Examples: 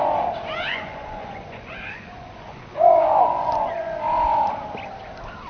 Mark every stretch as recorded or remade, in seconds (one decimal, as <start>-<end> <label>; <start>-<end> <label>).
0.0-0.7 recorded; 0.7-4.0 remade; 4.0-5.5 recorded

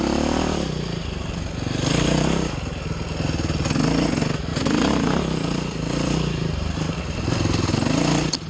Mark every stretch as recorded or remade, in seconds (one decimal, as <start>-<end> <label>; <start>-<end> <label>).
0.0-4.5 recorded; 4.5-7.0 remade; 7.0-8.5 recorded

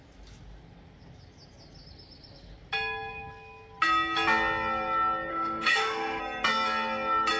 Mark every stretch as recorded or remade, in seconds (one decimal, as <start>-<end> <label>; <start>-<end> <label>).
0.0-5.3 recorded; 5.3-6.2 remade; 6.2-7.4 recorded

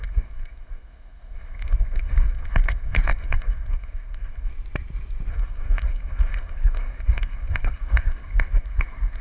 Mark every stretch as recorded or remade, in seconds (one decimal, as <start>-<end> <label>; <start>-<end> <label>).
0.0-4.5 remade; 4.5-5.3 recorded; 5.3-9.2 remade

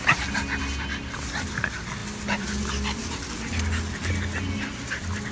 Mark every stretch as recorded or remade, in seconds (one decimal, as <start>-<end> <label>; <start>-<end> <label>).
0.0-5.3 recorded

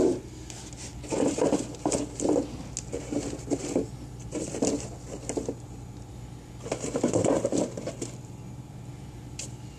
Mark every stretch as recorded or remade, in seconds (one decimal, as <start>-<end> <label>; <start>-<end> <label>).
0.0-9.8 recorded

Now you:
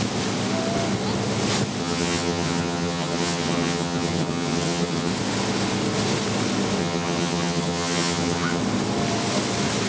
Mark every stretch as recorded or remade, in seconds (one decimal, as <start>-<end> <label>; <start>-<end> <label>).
0.0-1.8 recorded; 1.8-5.1 remade; 5.1-6.8 recorded; 6.8-8.6 remade; 8.6-9.9 recorded